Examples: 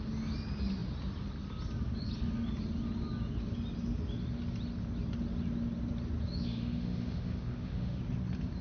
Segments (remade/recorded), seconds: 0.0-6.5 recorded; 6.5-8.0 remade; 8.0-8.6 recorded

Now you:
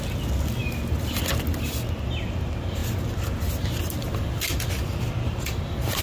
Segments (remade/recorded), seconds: 0.0-6.0 recorded

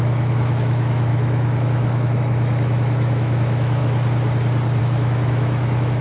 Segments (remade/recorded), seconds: 0.0-3.8 remade; 3.8-4.8 recorded; 4.8-6.0 remade